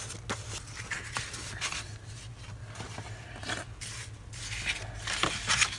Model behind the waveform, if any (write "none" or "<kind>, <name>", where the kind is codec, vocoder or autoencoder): none